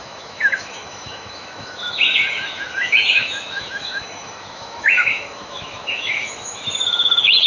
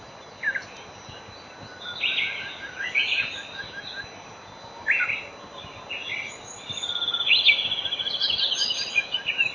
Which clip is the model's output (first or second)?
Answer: first